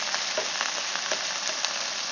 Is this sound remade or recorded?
recorded